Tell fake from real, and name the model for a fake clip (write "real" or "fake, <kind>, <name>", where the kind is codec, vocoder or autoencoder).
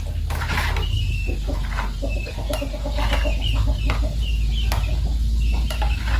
real